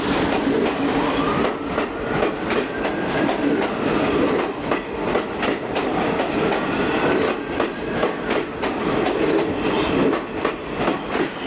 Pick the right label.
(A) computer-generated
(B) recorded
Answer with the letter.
B